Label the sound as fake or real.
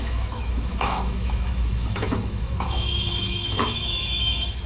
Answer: fake